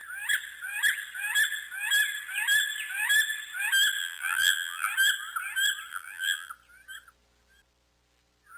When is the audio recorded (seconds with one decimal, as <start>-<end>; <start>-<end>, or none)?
0.0-4.0; 4.9-5.9; 6.5-8.6